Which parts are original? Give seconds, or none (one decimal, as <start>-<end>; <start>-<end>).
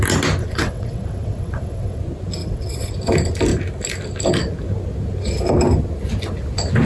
0.0-0.4; 2.0-2.4; 2.9-6.9